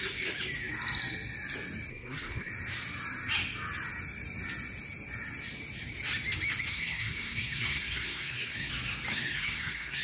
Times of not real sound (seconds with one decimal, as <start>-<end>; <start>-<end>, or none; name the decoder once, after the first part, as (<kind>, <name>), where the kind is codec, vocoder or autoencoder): 1.9-2.5 (codec, SNAC); 6.7-8.7; 9.1-10.0